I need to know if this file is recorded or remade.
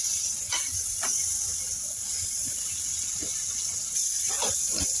recorded